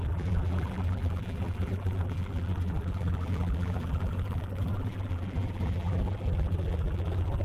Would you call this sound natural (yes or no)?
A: no